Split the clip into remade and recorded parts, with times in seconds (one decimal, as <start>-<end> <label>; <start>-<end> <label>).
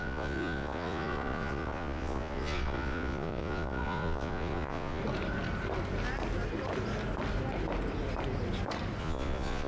0.0-5.0 remade; 5.0-9.0 recorded; 9.0-9.7 remade